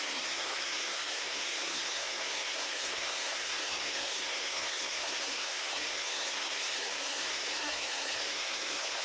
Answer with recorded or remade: remade